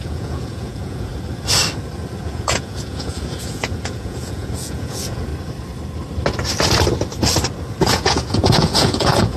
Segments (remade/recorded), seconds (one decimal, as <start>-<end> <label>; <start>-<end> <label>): 0.0-1.1 remade; 1.1-2.2 recorded; 2.2-5.3 remade; 5.3-7.8 recorded; 7.8-9.4 remade